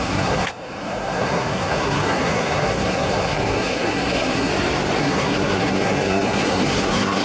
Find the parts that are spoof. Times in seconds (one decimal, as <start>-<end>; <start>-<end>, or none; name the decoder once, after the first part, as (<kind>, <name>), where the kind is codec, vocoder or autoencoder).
0.0-4.5 (codec, SNAC); 5.0-7.2